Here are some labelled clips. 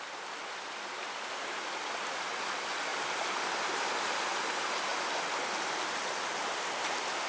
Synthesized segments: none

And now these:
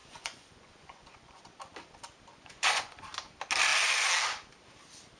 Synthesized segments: 0.0-1.4 (vocoder, Vocos); 2.3-3.0

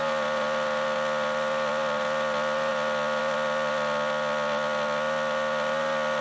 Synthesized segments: none

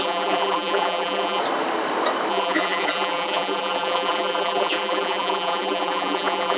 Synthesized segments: 0.0-1.4 (vocoder, BigVGAN v2); 2.3-6.6

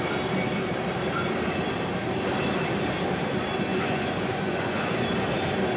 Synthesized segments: 3.7-4.9 (vocoder, Vocos)

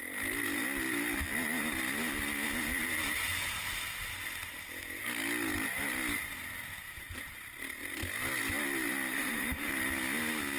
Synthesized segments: 9.1-9.7 (autoencoder, DAC-VAE)